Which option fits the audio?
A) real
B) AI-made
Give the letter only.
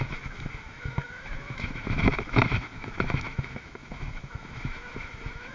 B